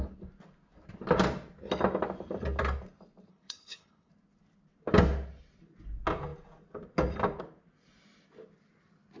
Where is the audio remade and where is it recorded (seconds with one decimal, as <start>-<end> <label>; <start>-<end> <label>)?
0.0-3.3 recorded; 3.3-4.1 remade; 4.1-9.2 recorded